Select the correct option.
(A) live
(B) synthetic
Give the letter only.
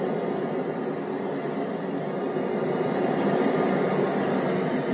A